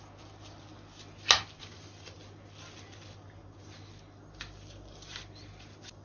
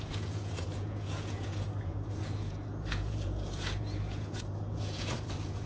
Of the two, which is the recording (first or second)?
first